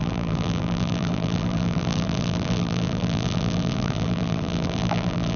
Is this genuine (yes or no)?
no